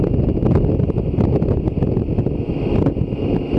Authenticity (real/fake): real